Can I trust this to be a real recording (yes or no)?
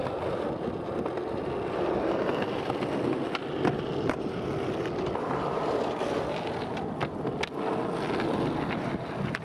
yes